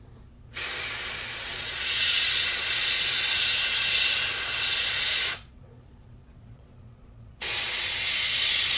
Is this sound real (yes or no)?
no